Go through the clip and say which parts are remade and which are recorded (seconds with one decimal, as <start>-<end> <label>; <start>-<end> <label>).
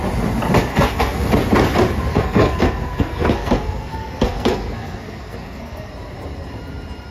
0.0-0.7 recorded; 0.7-1.3 remade; 1.3-2.1 recorded; 2.1-5.9 remade; 5.9-7.1 recorded